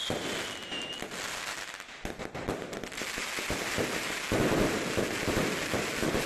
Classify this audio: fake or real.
real